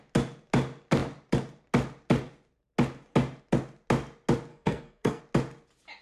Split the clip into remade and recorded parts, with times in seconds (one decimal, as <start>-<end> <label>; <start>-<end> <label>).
0.0-4.5 recorded; 4.5-5.2 remade; 5.2-6.0 recorded